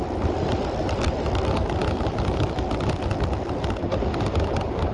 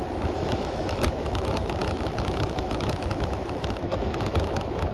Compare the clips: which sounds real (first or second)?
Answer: first